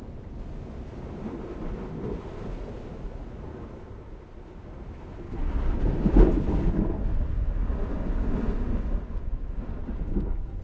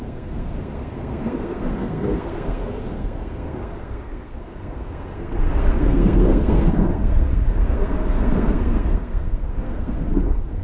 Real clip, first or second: first